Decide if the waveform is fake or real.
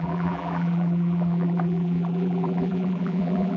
fake